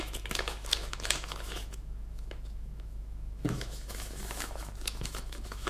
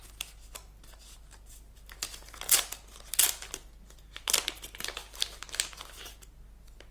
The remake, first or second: first